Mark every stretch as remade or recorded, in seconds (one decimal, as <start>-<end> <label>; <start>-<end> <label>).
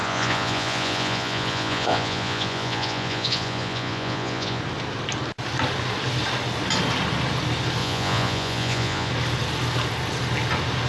0.0-4.6 remade; 4.6-7.8 recorded; 7.8-9.1 remade; 9.1-10.9 recorded